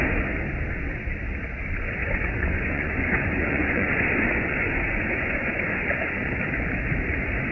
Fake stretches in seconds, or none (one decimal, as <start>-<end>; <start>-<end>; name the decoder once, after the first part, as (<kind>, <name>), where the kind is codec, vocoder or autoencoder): 2.0-6.4 (vocoder, Vocos)